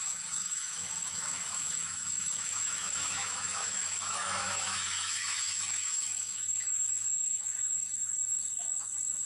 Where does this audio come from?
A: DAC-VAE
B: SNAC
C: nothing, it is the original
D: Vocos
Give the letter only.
A